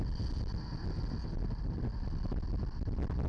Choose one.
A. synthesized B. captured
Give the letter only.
B